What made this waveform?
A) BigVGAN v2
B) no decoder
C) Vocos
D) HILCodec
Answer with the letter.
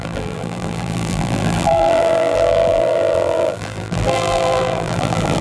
A